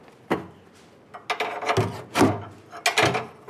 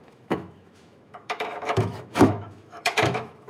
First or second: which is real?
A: first